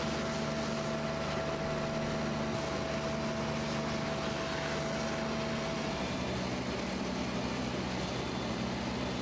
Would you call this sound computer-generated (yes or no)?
no